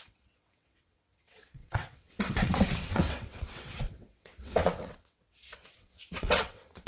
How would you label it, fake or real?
fake